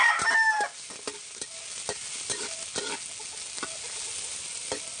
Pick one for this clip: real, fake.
real